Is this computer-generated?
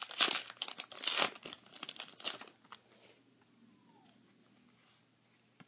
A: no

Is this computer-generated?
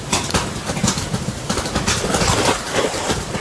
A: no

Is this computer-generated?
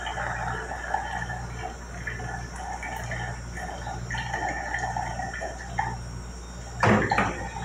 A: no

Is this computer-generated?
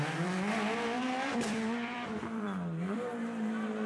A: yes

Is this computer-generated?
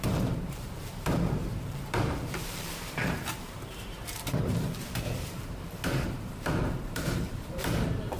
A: yes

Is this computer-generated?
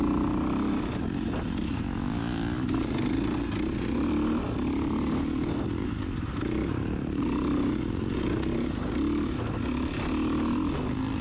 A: no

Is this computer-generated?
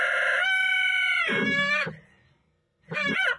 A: no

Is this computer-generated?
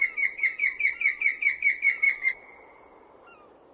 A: no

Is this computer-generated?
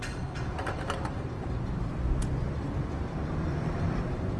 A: yes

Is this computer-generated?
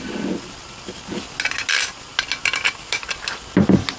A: no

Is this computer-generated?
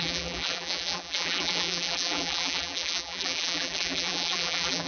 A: yes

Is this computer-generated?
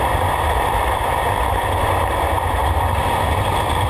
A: yes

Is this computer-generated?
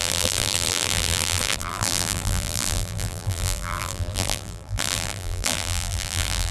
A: yes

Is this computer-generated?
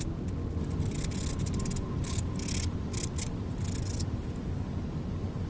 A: yes